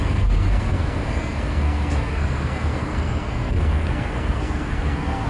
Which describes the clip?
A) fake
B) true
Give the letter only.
A